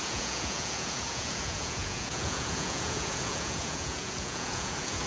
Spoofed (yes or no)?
yes